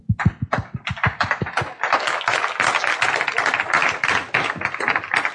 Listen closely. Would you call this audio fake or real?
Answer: real